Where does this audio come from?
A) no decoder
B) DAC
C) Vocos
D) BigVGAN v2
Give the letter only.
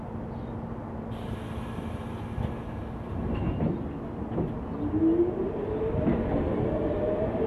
A